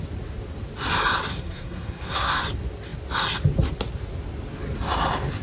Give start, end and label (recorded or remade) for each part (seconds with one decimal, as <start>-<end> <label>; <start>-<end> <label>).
0.0-1.3 recorded; 1.3-2.4 remade; 2.4-5.4 recorded